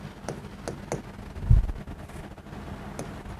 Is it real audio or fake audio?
real